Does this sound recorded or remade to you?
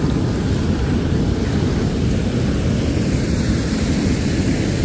recorded